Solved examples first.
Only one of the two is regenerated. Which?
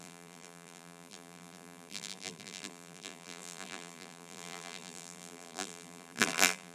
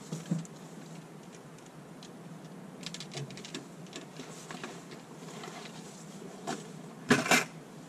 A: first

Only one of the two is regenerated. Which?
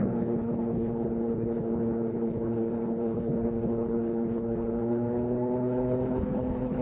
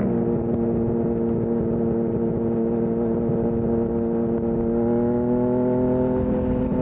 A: first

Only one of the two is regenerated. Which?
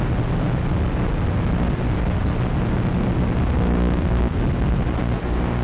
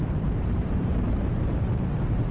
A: second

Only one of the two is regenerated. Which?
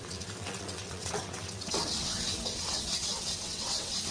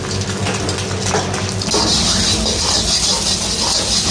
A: first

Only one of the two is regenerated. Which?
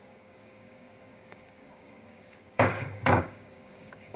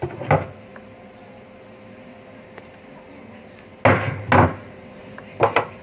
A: first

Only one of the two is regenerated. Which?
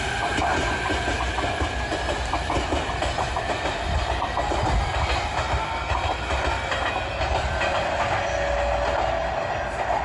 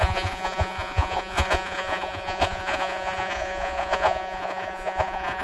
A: second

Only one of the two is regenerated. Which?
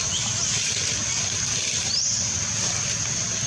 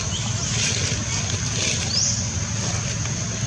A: first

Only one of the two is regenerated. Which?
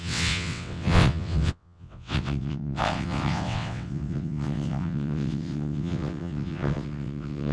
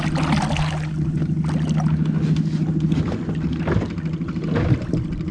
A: first